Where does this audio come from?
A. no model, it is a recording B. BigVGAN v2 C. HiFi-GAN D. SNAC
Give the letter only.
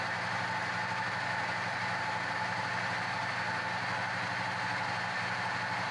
A